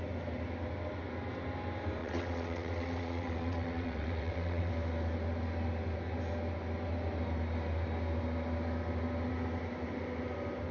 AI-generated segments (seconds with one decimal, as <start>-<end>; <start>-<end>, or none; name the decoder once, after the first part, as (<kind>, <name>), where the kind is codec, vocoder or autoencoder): 2.0-4.7 (vocoder, WaveNeXt)